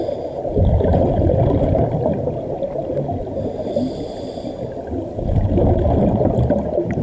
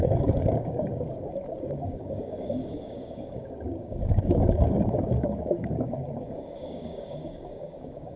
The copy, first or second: second